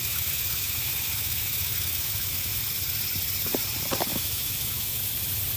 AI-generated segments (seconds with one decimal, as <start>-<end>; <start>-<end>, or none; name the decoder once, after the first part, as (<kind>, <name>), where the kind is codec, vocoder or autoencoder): 0.0-2.6 (autoencoder, DAC-VAE); 4.1-5.0